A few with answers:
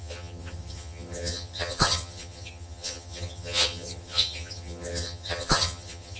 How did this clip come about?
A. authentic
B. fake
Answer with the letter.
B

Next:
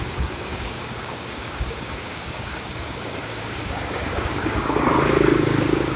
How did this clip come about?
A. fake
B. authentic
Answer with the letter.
A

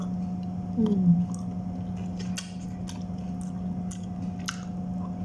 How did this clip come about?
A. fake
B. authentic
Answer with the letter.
B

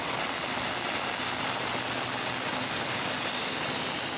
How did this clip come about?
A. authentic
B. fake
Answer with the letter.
A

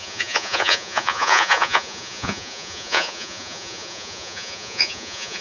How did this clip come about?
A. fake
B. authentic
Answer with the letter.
A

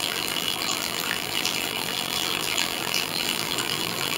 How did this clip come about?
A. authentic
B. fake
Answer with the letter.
B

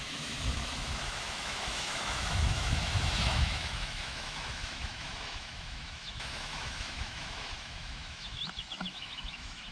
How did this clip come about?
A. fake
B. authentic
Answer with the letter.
A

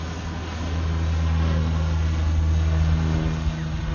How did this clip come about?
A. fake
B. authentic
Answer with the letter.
B